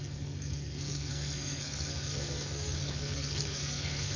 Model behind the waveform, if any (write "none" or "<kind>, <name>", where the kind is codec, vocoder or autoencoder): codec, SNAC